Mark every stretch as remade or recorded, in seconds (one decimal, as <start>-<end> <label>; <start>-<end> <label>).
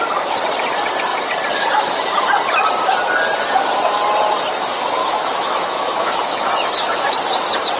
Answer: 0.0-5.0 recorded; 5.0-7.1 remade; 7.1-7.8 recorded